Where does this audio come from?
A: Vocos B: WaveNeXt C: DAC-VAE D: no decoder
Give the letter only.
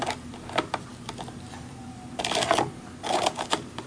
D